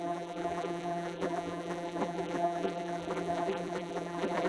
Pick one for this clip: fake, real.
fake